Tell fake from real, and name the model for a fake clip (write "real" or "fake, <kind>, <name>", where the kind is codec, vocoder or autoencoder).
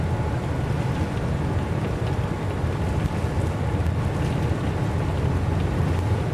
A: real